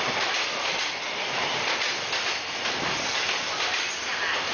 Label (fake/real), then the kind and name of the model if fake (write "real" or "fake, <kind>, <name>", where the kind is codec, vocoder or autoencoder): real